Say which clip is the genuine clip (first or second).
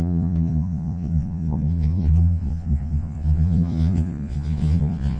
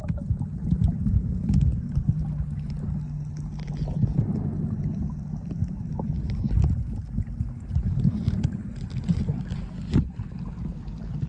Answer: second